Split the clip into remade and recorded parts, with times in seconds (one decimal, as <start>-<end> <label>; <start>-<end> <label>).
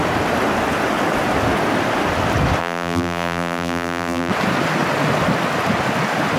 0.0-2.6 recorded; 2.6-4.3 remade; 4.3-6.4 recorded